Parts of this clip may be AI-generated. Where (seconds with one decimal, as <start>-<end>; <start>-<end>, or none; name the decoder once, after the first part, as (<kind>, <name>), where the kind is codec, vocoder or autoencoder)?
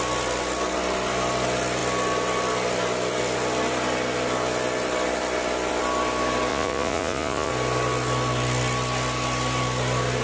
6.5-7.5 (vocoder, Vocos)